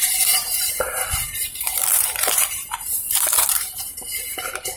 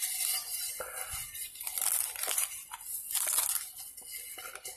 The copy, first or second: first